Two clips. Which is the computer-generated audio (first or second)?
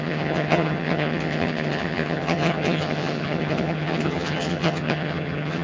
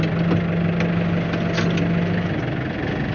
first